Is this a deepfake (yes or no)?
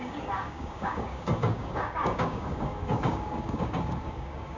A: yes